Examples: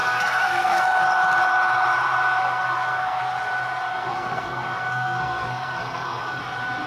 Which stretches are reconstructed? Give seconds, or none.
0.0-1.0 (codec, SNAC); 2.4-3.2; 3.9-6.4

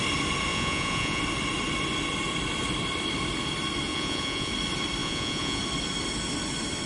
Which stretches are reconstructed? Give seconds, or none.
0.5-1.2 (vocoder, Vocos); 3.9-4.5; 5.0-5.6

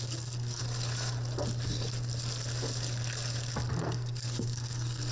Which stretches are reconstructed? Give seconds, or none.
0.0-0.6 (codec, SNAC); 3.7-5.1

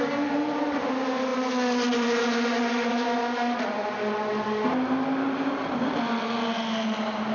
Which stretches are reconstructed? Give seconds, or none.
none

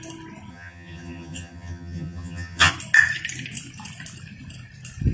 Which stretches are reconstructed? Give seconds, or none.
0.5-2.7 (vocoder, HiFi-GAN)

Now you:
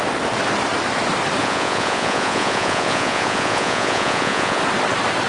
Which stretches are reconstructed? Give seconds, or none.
1.4-4.6 (vocoder, Vocos)

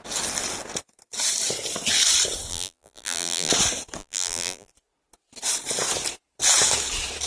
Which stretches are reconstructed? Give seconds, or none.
2.5-3.5 (vocoder, BigVGAN v2); 4.0-4.7

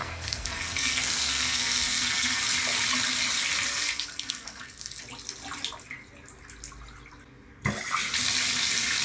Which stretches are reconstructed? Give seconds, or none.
0.0-2.4 (codec, SNAC); 3.7-5.0